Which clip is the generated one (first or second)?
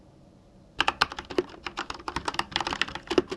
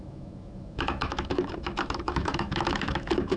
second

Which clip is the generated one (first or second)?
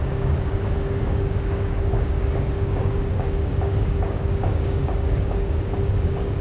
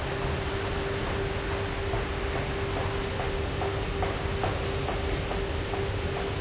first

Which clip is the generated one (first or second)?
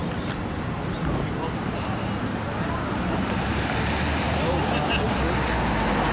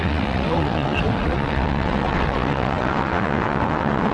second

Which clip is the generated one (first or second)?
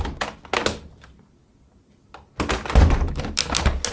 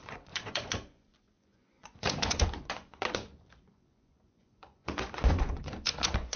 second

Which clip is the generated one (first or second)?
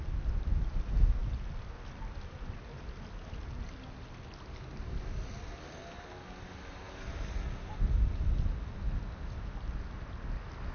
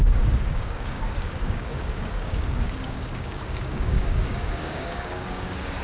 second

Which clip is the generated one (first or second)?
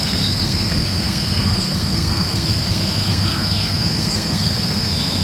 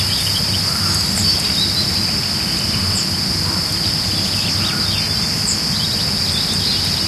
first